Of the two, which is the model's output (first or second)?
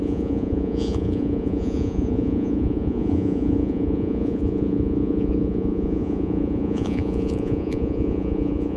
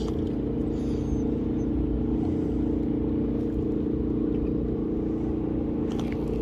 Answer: first